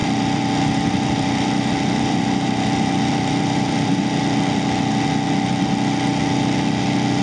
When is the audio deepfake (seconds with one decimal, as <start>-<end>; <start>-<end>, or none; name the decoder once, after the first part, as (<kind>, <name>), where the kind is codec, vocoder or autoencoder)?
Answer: 0.0-4.2 (vocoder, BigVGAN v2)